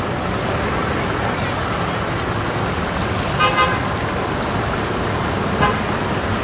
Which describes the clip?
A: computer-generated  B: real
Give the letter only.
B